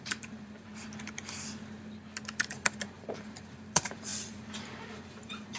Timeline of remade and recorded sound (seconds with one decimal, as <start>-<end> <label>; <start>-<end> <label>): 0.0-0.7 remade; 0.7-2.5 recorded; 2.5-5.6 remade